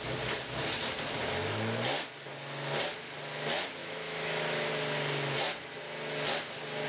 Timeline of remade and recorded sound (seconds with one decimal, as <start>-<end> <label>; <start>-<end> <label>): 0.0-3.8 recorded; 3.8-4.7 remade; 4.7-6.9 recorded